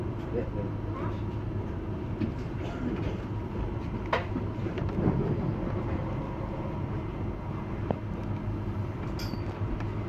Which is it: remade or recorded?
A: recorded